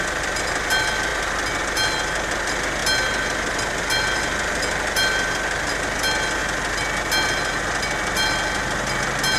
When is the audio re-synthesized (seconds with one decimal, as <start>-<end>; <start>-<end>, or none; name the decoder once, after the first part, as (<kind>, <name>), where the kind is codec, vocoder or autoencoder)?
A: none